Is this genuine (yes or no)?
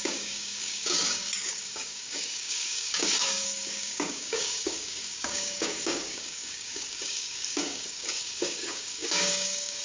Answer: no